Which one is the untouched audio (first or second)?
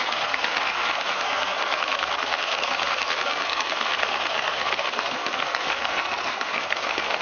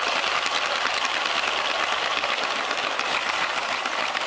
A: second